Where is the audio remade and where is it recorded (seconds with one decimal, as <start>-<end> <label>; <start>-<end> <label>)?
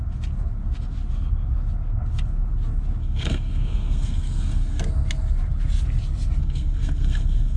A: 0.0-3.0 recorded; 3.0-4.8 remade; 4.8-6.4 recorded; 6.4-7.6 remade